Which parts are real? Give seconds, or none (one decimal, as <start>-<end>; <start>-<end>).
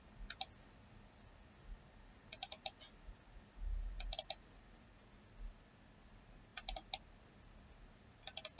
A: 0.0-8.6